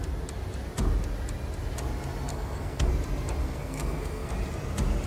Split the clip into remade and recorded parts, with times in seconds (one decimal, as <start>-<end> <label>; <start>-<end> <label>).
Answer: 0.0-2.3 recorded; 2.3-2.9 remade; 2.9-3.4 recorded; 3.4-4.3 remade; 4.3-5.1 recorded